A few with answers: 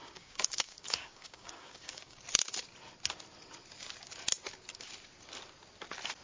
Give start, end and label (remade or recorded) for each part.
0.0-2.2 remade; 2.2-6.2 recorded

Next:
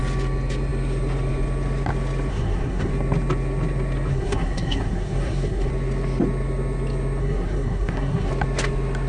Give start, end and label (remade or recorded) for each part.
0.0-2.3 recorded; 2.3-2.9 remade; 2.9-4.1 recorded; 4.1-5.7 remade; 5.7-7.2 recorded; 7.2-8.3 remade; 8.3-9.1 recorded

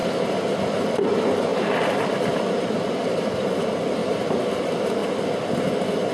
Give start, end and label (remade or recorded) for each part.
0.0-0.8 recorded; 0.8-4.0 remade; 4.0-4.6 recorded; 4.6-5.0 remade; 5.0-6.1 recorded

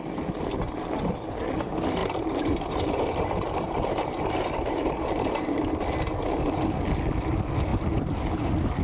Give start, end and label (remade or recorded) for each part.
0.0-2.0 recorded; 2.0-5.6 remade; 5.6-8.8 recorded